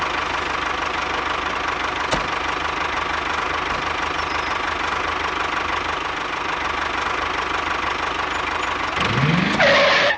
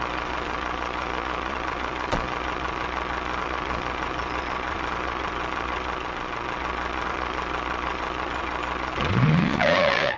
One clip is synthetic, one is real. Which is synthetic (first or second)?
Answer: second